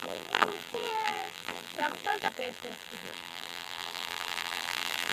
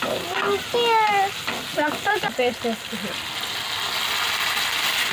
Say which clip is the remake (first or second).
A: first